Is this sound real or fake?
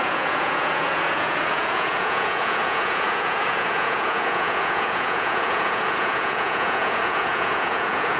fake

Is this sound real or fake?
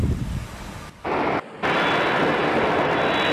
real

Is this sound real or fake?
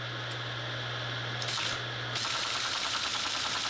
real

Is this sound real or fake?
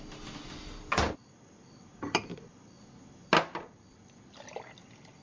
real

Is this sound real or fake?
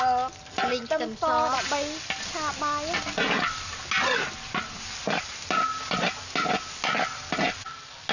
real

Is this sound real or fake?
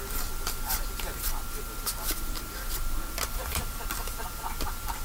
real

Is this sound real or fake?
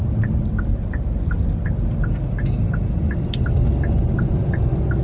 real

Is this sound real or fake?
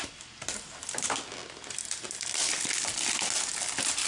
real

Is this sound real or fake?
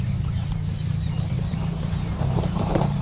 fake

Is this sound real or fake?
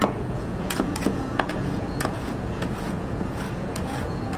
fake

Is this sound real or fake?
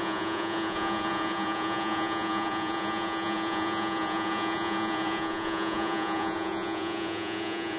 fake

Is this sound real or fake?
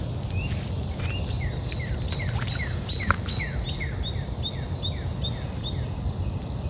real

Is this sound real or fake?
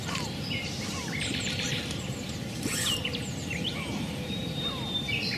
fake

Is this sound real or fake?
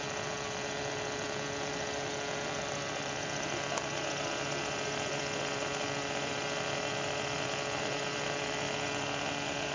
real